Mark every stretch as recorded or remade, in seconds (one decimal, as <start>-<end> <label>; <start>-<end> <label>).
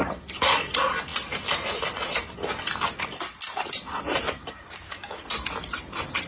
0.0-4.4 recorded; 4.4-5.2 remade; 5.2-6.3 recorded